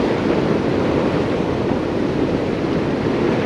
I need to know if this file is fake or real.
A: fake